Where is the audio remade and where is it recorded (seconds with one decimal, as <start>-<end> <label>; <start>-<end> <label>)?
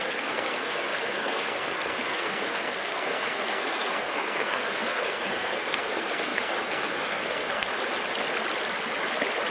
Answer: 0.0-7.7 remade; 7.7-9.5 recorded